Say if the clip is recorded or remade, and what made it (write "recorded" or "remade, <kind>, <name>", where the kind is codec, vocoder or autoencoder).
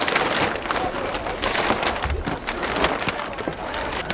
recorded